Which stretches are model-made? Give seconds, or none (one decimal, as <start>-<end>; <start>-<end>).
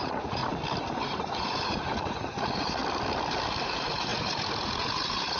0.0-0.4; 1.0-2.8; 3.6-5.4